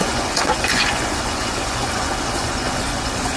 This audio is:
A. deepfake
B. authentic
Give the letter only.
A